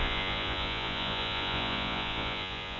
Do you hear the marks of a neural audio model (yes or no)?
yes